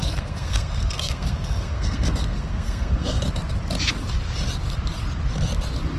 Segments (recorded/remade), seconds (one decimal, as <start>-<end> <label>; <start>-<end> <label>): 0.0-3.2 remade; 3.2-6.0 recorded